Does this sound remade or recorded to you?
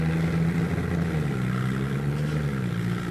recorded